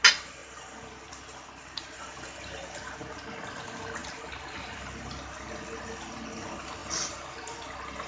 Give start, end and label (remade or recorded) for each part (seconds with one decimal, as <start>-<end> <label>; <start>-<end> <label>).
0.0-8.1 recorded